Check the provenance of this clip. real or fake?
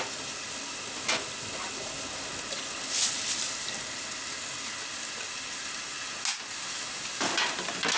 real